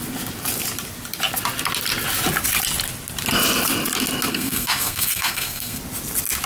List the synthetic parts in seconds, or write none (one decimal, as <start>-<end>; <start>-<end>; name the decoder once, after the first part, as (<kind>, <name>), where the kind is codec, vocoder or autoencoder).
4.3-5.8 (codec, SNAC)